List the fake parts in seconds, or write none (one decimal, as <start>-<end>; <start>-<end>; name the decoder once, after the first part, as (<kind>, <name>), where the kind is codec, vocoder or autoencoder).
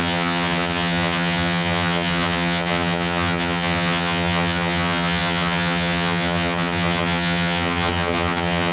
0.0-8.7 (vocoder, HiFi-GAN)